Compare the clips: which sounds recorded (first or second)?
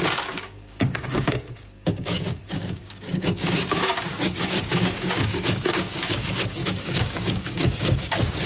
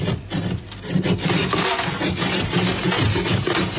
second